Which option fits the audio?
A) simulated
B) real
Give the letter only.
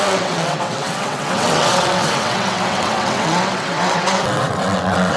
A